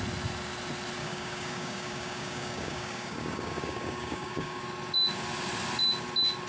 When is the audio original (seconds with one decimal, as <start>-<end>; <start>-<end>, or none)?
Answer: 0.0-1.0; 4.6-6.5